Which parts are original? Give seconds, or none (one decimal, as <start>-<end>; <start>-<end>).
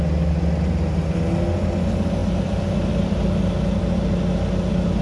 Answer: 0.0-5.0